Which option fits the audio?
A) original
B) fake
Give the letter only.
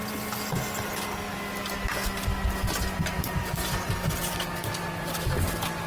A